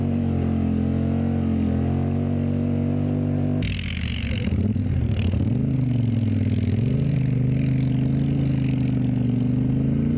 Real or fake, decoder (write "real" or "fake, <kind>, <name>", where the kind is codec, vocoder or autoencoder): real